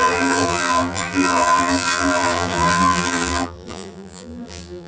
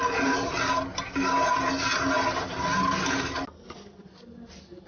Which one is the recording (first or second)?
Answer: second